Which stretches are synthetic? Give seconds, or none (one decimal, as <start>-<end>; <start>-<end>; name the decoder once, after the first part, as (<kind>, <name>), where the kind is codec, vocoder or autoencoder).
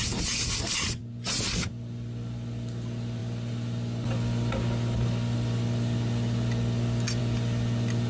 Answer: none